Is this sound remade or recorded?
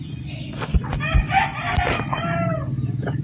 recorded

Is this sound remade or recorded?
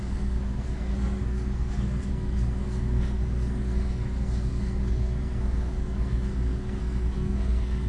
remade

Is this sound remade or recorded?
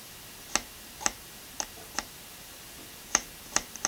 recorded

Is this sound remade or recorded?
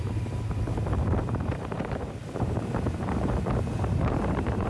remade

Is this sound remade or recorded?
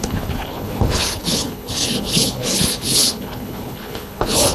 remade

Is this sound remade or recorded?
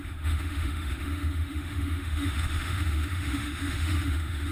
remade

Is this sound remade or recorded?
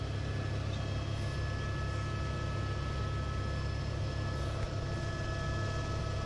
recorded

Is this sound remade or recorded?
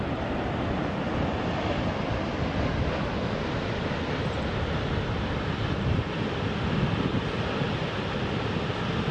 remade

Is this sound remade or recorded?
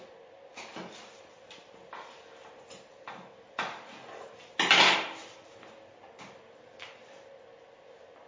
recorded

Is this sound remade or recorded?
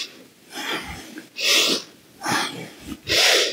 recorded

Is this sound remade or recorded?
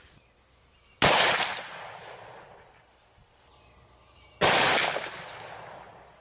recorded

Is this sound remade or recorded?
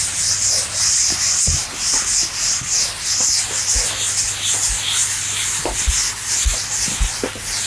recorded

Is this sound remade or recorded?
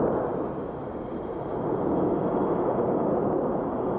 recorded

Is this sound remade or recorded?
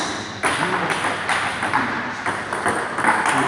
recorded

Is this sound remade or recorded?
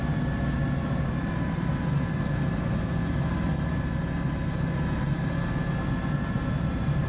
recorded